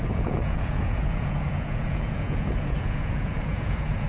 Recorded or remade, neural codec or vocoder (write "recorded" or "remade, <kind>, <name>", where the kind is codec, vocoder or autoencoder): remade, vocoder, Vocos